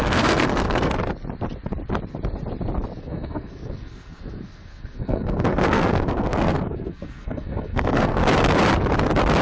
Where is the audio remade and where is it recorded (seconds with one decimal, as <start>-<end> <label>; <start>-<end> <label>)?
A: 0.0-0.9 remade; 0.9-3.0 recorded; 3.0-8.2 remade; 8.2-9.4 recorded